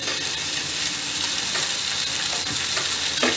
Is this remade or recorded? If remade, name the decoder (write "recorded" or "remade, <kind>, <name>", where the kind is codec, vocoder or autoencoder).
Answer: recorded